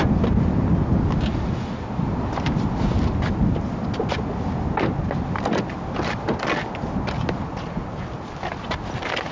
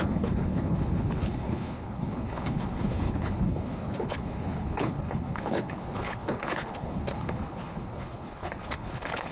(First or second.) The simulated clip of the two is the second